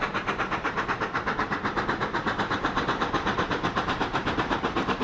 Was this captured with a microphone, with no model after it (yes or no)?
no